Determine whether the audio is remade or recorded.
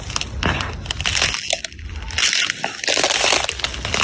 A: recorded